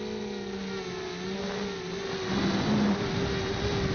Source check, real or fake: real